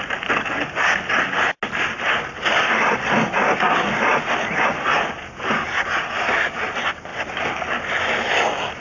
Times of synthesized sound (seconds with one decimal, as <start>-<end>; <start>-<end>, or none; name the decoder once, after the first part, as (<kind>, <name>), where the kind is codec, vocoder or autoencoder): none